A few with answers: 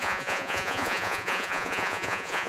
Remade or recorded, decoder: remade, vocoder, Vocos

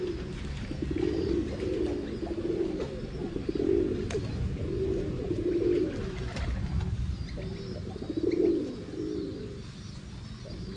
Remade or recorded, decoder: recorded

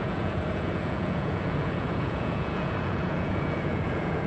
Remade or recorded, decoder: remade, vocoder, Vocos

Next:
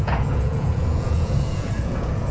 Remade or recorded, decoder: remade, vocoder, Vocos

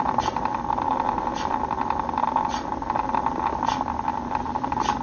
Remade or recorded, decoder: recorded